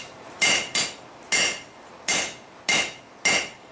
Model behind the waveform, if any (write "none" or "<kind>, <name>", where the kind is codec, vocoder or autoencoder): none